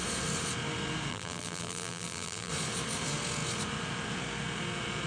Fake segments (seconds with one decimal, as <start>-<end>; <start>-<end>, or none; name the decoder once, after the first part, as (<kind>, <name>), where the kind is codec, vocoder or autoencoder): 1.1-2.5 (vocoder, BigVGAN v2)